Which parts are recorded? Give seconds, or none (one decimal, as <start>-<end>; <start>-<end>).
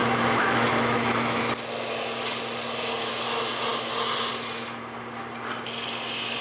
1.4-6.4